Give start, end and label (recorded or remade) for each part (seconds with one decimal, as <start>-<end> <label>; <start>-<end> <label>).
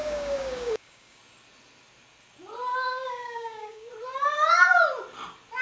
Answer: 0.0-1.2 remade; 1.2-2.7 recorded; 2.7-3.9 remade; 3.9-5.6 recorded